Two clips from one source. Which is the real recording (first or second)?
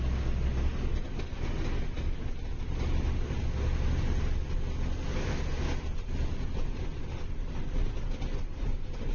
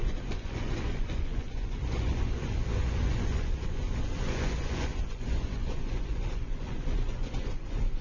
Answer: first